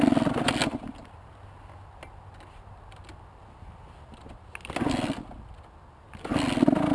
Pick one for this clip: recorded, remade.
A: recorded